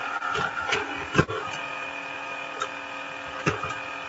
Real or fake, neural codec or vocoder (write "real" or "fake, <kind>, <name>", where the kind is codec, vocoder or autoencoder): real